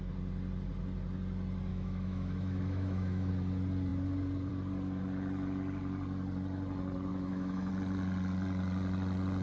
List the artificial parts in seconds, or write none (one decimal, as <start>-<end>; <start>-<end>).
1.7-3.3; 7.1-7.7